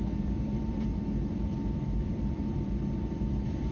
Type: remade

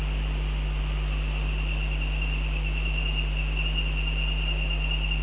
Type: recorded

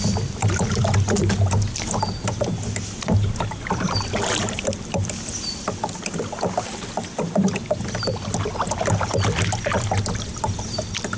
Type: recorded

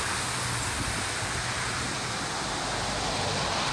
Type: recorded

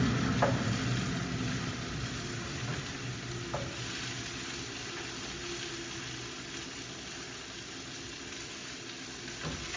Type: recorded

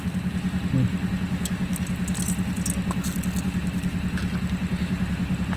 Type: recorded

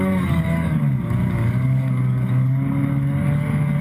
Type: remade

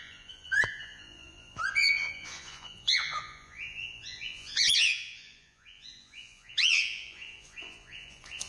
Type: remade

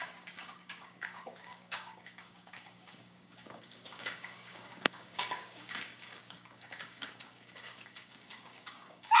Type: remade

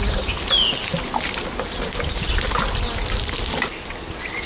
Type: recorded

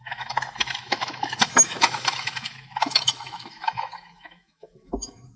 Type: remade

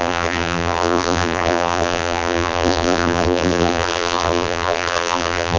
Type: remade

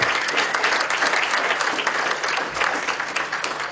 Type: recorded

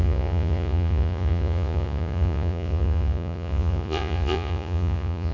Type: remade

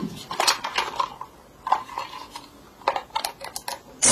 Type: recorded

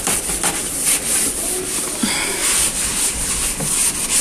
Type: recorded